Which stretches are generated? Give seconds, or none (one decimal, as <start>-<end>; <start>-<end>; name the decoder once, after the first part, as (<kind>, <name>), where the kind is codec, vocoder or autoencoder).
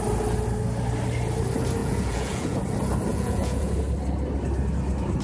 1.8-2.6 (vocoder, Vocos); 3.1-3.7